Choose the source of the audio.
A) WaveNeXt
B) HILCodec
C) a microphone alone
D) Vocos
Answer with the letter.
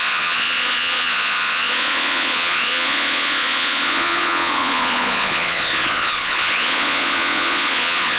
D